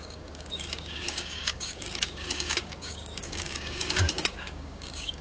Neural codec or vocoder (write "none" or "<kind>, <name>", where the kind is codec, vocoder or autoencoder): codec, DAC